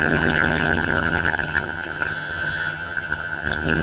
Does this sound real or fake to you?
fake